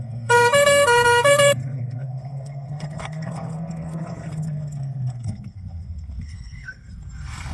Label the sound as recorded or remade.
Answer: remade